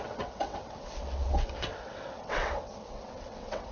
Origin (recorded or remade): remade